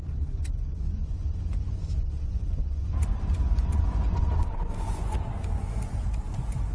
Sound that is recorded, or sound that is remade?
remade